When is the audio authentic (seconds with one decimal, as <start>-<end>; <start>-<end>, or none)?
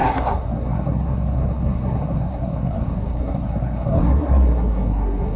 none